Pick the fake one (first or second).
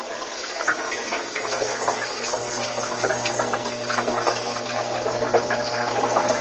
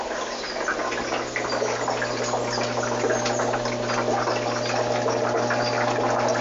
first